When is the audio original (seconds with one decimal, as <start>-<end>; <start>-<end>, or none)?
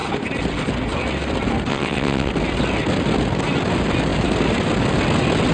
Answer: 0.0-1.7; 2.3-5.5